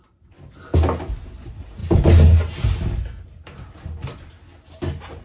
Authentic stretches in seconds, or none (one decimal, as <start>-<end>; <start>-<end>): 0.0-5.2